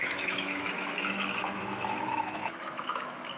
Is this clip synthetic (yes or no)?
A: yes